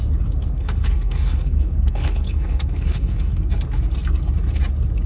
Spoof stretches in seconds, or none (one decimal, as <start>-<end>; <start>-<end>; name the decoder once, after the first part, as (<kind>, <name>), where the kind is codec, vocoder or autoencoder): 0.4-3.5 (codec, SNAC)